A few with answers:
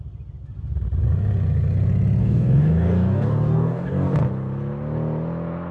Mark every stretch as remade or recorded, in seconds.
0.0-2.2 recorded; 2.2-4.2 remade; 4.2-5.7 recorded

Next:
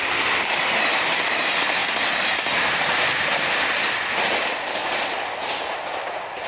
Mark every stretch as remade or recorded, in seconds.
0.0-1.8 remade; 1.8-3.9 recorded; 3.9-6.5 remade

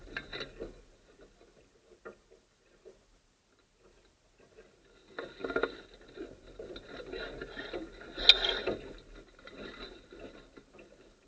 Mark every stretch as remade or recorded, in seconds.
0.0-11.3 recorded